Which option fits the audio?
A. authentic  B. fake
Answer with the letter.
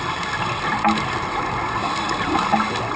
A